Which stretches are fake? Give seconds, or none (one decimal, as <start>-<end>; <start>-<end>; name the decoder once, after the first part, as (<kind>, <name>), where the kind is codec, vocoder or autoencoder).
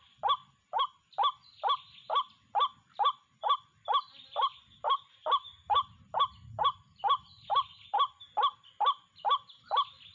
none